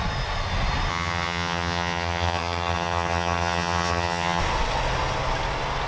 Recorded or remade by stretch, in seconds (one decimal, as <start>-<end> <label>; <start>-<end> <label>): 0.0-0.9 recorded; 0.9-4.4 remade; 4.4-5.9 recorded